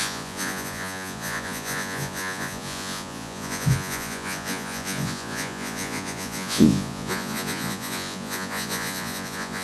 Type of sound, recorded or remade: remade